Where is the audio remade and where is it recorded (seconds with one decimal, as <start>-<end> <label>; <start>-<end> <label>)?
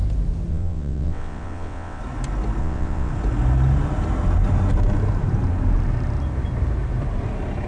0.0-0.5 recorded; 0.5-2.0 remade; 2.0-2.6 recorded; 2.6-3.1 remade; 3.1-7.7 recorded